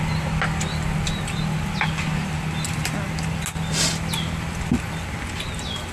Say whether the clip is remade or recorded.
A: recorded